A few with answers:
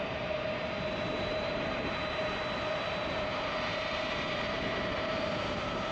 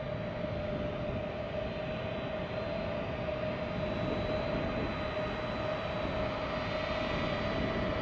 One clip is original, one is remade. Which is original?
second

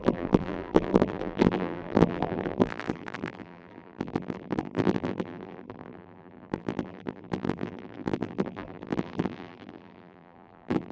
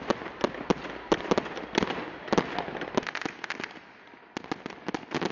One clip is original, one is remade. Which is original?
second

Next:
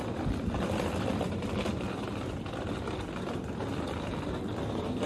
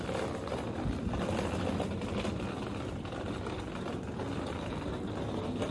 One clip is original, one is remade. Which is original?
second